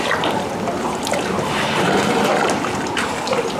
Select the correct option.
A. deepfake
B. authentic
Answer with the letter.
B